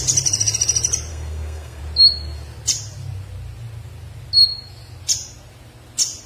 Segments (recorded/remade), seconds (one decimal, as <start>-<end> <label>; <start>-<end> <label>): 0.0-1.1 recorded; 1.1-1.8 remade; 1.8-6.3 recorded